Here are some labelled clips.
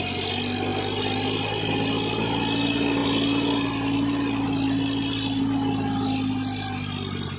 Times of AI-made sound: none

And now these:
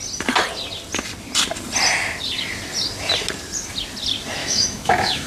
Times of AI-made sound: 4.4-5.3

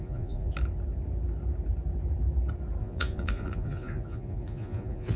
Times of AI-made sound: 0.0-0.5; 2.8-5.2

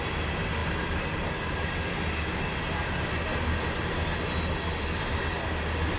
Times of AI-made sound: none

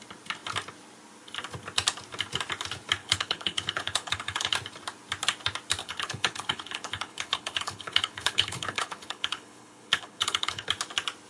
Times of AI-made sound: 3.0-4.5; 5.8-10.7

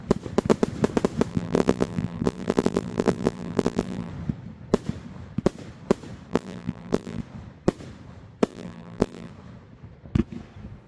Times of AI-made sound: 1.3-4.1; 6.3-7.2; 8.5-9.3

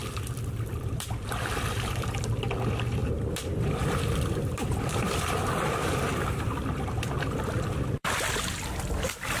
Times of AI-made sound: 0.0-2.4; 3.0-8.3